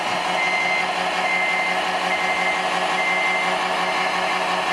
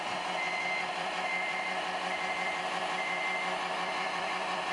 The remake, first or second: second